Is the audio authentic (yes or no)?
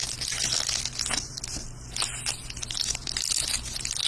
yes